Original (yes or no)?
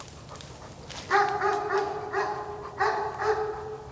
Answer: yes